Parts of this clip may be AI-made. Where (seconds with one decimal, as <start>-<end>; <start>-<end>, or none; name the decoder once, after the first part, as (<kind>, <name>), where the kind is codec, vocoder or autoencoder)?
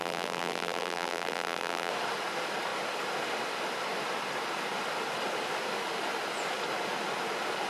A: 0.0-1.9 (vocoder, BigVGAN v2)